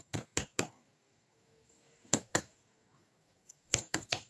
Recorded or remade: remade